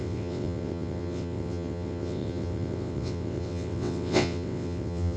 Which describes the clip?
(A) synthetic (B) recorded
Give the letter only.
A